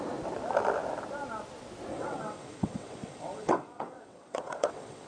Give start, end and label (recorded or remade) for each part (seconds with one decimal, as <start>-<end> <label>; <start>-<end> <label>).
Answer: 0.0-1.9 recorded; 1.9-5.1 remade